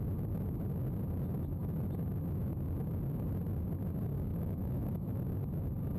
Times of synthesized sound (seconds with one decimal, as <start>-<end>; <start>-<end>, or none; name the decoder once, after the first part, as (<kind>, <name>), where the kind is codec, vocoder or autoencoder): 4.3-5.2 (autoencoder, DAC-VAE)